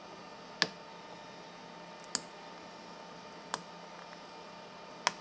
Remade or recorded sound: recorded